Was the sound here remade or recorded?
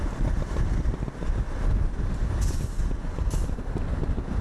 recorded